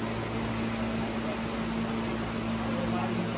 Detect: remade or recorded recorded